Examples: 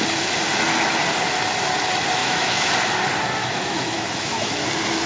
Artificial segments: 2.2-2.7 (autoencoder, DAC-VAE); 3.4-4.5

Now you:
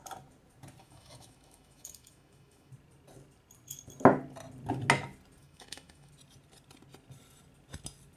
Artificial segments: 0.8-2.7 (autoencoder, DAC-VAE); 5.4-6.1

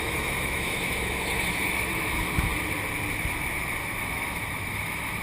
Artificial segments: 0.0-2.5 (autoencoder, DAC-VAE); 3.8-5.2

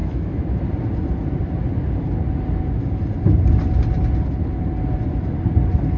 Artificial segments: 0.0-0.6 (autoencoder, DAC-VAE)

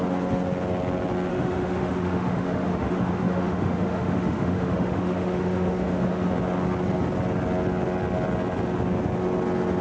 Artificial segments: 1.3-6.3 (autoencoder, DAC-VAE)

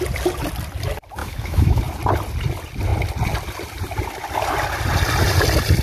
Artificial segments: 1.2-1.8 (autoencoder, DAC-VAE)

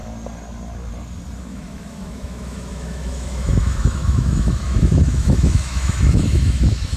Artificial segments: 1.4-7.0 (autoencoder, DAC-VAE)

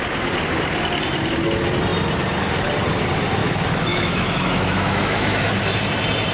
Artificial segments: 3.4-5.4 (autoencoder, DAC-VAE)